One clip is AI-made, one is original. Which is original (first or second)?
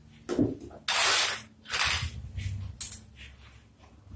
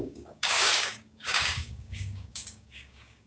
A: first